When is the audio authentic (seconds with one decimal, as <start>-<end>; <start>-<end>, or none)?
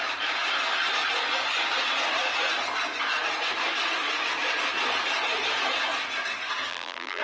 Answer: 0.0-6.7